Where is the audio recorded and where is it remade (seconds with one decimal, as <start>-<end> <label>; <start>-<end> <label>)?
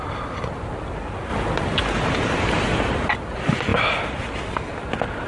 0.0-3.7 recorded; 3.7-5.3 remade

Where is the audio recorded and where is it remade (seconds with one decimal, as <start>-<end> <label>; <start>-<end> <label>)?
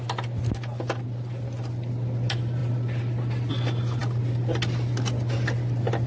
0.0-6.1 recorded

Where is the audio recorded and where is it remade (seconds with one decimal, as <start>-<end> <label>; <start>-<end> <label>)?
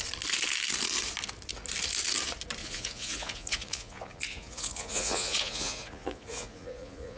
0.0-2.6 recorded; 2.6-7.2 remade